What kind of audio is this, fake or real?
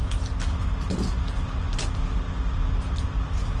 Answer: real